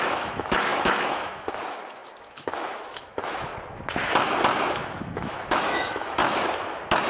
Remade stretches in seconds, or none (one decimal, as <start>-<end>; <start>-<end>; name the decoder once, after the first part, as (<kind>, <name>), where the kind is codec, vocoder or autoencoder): 0.0-3.5 (autoencoder, DAC-VAE); 4.7-6.2